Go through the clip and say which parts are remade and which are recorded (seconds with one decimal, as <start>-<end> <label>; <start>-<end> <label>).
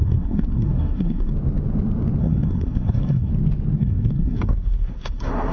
0.0-1.3 remade; 1.3-2.2 recorded; 2.2-3.3 remade; 3.3-3.8 recorded; 3.8-5.5 remade